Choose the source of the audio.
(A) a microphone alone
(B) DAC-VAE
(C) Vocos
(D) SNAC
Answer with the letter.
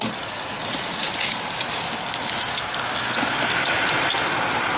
A